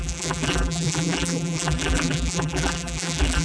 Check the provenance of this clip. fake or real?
fake